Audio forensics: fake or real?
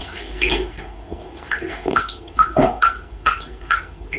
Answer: fake